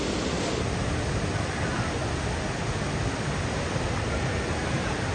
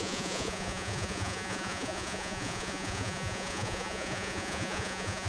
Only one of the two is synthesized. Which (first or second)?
second